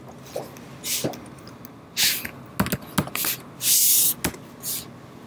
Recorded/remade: recorded